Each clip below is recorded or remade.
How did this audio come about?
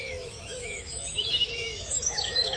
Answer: remade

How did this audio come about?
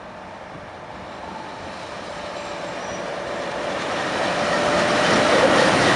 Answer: recorded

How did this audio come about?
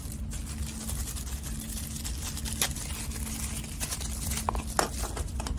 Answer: recorded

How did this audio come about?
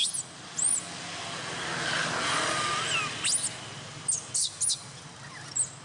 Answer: recorded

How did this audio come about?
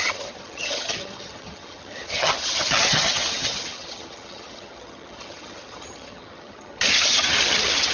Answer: remade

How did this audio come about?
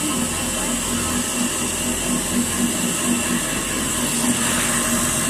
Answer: recorded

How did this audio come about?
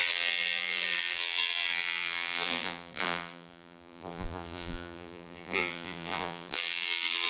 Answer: remade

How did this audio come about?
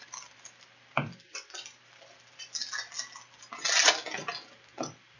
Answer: recorded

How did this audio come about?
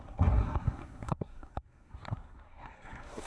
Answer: remade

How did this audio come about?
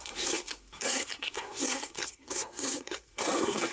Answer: remade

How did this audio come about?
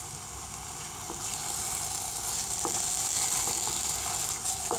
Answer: recorded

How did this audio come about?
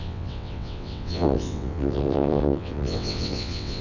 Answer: remade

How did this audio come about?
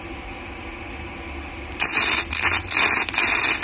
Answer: recorded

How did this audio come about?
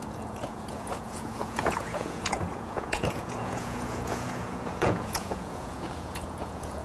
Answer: remade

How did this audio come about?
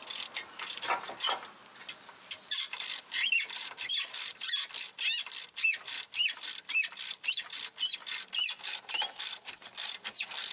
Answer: remade